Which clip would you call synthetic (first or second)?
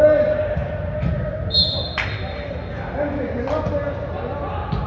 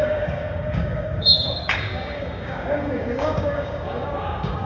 second